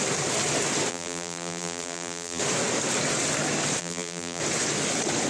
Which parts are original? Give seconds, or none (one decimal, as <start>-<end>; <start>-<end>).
0.0-0.9; 2.4-3.8; 4.4-5.3